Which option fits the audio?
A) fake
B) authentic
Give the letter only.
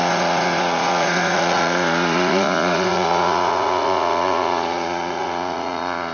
A